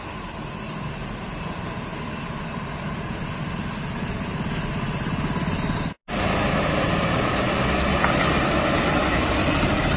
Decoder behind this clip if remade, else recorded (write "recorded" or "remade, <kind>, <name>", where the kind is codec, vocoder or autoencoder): recorded